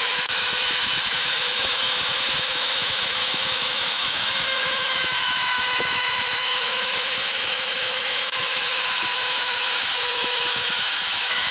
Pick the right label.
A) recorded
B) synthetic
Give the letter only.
B